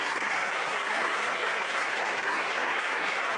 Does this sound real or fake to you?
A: fake